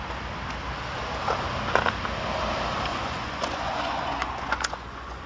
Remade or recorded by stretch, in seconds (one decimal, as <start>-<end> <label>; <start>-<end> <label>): 0.0-2.9 recorded; 2.9-5.3 remade